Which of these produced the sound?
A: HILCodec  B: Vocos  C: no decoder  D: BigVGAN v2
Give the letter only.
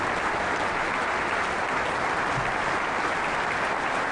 C